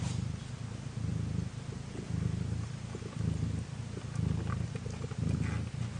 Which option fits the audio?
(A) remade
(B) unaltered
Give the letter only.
B